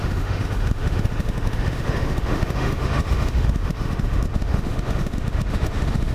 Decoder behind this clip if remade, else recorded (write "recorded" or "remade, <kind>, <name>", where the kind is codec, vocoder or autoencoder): remade, autoencoder, DAC-VAE